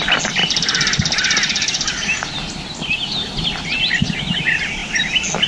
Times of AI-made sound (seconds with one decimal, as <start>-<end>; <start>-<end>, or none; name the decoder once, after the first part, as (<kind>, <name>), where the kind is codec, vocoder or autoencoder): none